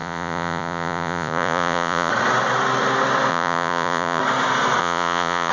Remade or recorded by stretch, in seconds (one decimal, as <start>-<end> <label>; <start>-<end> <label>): 0.0-2.1 remade; 2.1-3.3 recorded; 3.3-4.2 remade; 4.2-4.8 recorded; 4.8-5.5 remade